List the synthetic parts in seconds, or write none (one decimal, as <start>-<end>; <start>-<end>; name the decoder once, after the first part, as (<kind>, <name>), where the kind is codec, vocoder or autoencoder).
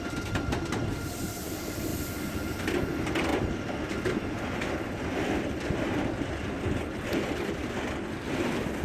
3.3-8.1 (vocoder, BigVGAN v2)